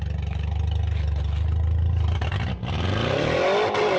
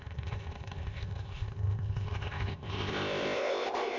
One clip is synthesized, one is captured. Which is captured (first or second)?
first